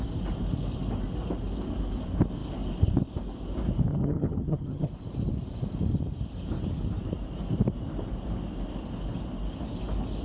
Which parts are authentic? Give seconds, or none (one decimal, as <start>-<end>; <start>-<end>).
0.0-3.9; 4.9-10.2